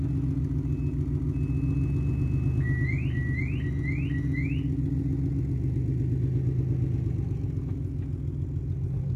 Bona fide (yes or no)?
yes